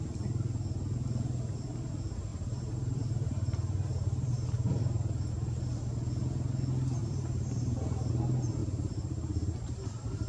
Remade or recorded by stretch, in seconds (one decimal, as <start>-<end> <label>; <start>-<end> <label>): 0.0-2.3 recorded; 2.3-5.3 remade; 5.3-7.0 recorded; 7.0-8.1 remade; 8.1-8.6 recorded; 8.6-10.3 remade